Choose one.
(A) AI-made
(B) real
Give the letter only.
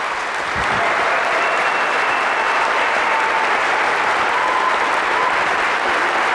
B